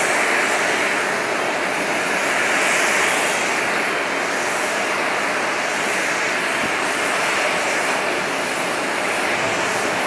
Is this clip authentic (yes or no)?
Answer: yes